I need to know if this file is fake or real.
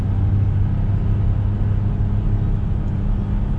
real